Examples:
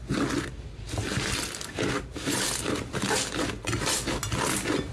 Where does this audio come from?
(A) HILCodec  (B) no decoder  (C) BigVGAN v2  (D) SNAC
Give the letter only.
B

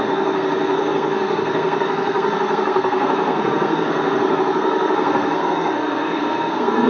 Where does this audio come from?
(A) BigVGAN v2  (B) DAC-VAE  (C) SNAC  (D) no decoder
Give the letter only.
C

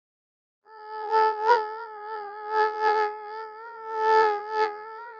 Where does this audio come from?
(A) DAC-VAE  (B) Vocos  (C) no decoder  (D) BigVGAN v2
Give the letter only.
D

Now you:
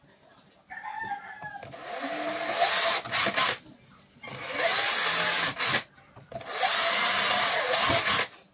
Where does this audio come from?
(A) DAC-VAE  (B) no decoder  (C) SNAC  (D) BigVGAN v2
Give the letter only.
B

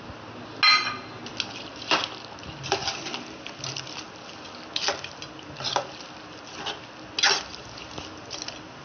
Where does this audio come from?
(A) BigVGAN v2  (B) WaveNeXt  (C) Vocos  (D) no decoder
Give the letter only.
D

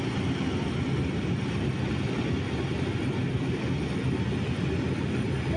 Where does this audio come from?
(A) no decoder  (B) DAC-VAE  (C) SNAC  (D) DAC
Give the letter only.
A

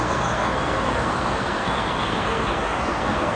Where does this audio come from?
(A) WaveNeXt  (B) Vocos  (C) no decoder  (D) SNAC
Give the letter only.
D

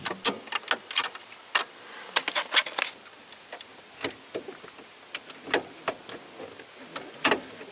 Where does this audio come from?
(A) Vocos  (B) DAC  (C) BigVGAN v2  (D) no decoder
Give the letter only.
D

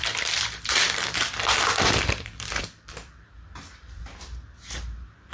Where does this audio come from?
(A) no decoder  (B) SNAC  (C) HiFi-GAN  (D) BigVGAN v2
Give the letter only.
D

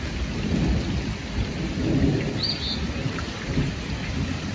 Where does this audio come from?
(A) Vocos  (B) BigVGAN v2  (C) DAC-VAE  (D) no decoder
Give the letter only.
D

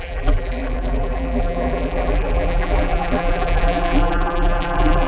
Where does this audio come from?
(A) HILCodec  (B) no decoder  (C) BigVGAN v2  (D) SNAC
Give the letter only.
C